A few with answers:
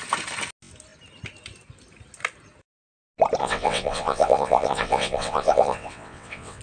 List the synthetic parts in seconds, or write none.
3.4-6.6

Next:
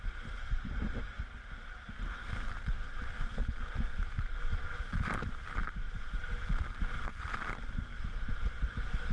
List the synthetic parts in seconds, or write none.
none